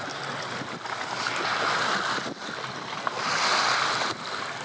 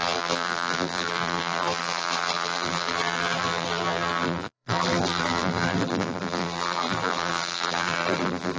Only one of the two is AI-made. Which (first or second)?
second